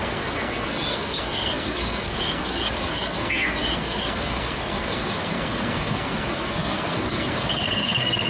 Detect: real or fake fake